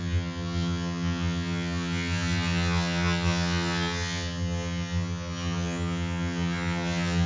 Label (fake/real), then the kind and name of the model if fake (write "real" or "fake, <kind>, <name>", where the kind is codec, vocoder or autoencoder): fake, vocoder, HiFi-GAN